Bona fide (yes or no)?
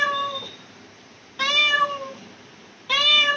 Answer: no